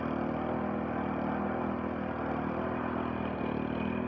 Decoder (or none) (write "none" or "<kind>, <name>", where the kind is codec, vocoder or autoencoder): none